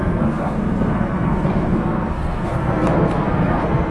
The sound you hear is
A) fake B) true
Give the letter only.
A